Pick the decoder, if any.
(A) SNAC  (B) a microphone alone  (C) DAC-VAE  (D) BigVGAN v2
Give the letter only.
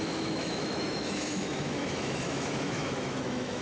C